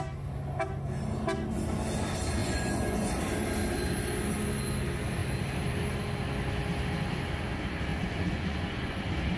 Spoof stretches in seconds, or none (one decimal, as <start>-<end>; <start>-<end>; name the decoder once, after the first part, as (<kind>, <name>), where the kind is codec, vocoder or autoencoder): 2.4-3.1 (vocoder, Vocos); 7.9-9.0